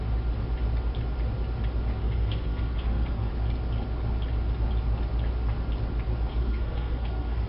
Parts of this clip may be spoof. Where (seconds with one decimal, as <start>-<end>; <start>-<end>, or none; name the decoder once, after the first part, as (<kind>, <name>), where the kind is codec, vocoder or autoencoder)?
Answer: 2.0-3.3 (codec, SNAC); 6.3-7.5